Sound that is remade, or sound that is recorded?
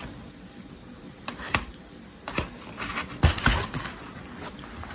recorded